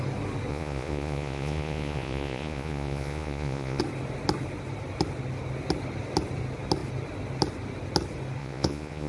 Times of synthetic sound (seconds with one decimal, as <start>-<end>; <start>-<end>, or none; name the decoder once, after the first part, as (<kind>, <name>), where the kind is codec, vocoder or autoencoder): 0.5-3.8 (vocoder, Vocos); 8.4-9.1